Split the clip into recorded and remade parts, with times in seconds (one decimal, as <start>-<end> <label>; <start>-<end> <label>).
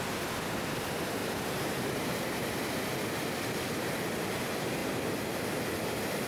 0.0-1.2 recorded; 1.2-2.5 remade; 2.5-6.3 recorded